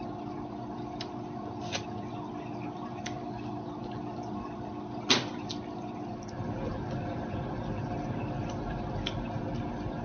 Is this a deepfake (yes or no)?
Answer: no